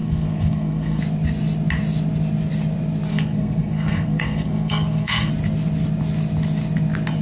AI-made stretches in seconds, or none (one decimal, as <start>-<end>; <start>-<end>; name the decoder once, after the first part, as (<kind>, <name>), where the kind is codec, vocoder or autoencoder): 0.0-1.0 (codec, SNAC); 3.1-5.3